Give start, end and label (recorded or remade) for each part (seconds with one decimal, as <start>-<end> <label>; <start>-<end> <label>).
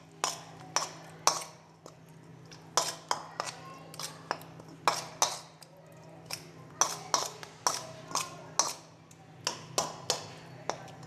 0.0-11.1 recorded